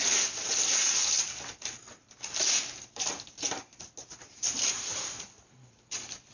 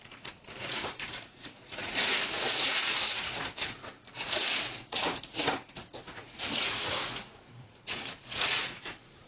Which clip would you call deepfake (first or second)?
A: second